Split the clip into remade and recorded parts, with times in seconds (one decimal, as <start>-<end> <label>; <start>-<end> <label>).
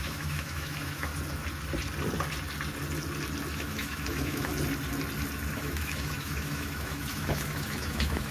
0.0-1.1 remade; 1.1-3.5 recorded; 3.5-4.5 remade; 4.5-5.5 recorded; 5.5-8.3 remade